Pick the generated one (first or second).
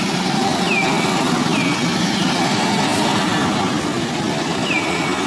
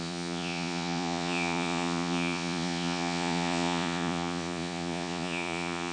second